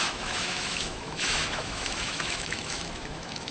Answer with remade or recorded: remade